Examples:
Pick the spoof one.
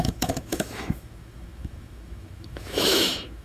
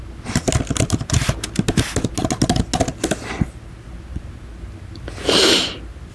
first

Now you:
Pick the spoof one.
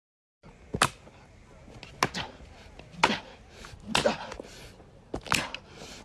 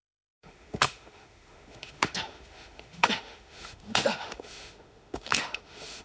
second